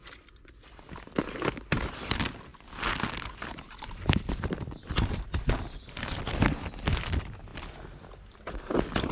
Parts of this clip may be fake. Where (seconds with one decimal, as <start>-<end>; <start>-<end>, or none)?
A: none